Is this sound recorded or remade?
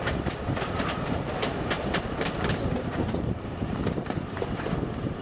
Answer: remade